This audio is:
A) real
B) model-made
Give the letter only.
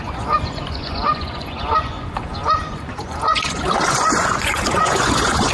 B